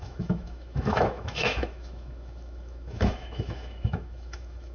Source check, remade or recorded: remade